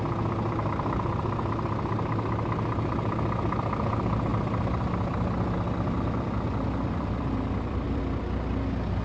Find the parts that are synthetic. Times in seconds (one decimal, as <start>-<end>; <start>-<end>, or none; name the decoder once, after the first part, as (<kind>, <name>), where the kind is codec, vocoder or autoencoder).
4.3-8.0 (vocoder, BigVGAN v2)